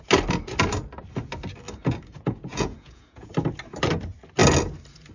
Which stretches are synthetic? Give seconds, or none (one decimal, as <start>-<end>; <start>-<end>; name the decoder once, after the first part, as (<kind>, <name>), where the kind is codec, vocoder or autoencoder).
2.1-3.3 (vocoder, Vocos)